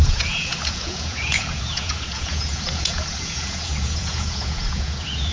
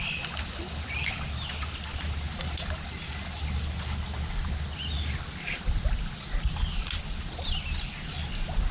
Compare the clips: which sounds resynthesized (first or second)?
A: first